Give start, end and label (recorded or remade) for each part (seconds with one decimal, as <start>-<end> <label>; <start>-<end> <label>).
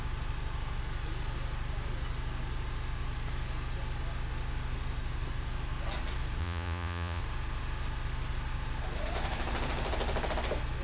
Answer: 0.0-6.4 recorded; 6.4-7.2 remade; 7.2-10.8 recorded